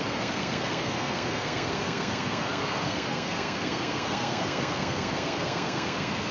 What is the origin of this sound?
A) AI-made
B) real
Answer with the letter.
A